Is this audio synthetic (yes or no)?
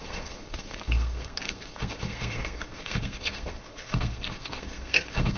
yes